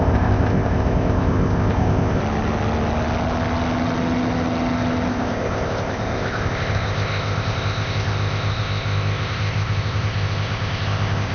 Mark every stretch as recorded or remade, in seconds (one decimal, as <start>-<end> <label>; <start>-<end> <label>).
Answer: 0.0-2.2 remade; 2.2-5.1 recorded; 5.1-11.3 remade